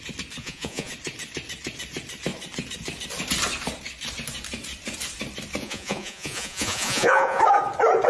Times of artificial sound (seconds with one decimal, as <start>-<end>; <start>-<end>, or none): 0.4-0.9; 5.6-7.4